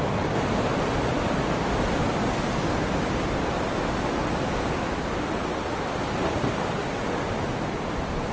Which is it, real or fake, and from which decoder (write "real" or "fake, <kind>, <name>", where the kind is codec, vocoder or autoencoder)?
real